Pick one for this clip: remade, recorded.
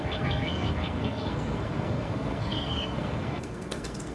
remade